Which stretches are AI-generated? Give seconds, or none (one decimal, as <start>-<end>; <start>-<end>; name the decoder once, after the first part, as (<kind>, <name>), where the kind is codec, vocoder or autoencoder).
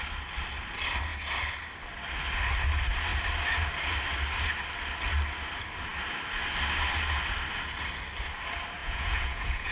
8.8-9.7 (vocoder, Vocos)